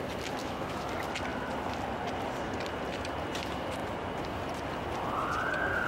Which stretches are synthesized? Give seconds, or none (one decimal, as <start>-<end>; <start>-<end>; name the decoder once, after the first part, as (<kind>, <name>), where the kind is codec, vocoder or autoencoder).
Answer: 0.4-0.9 (autoencoder, DAC-VAE)